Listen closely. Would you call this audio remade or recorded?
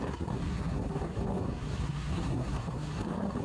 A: remade